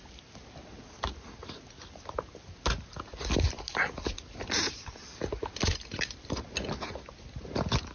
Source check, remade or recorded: recorded